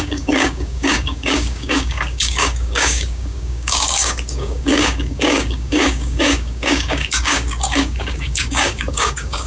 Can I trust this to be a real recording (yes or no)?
no